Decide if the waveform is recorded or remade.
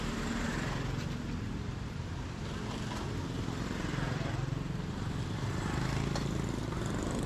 recorded